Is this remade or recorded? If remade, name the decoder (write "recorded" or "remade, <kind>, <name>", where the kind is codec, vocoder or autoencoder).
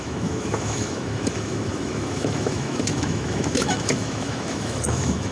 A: remade, autoencoder, DAC-VAE